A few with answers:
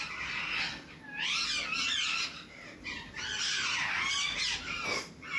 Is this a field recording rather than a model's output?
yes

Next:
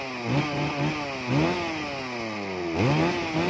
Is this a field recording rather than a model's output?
yes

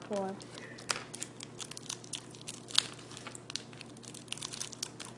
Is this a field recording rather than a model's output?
yes